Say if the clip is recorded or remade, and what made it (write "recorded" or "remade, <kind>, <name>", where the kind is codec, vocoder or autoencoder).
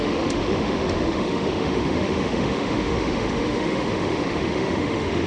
remade, autoencoder, DAC-VAE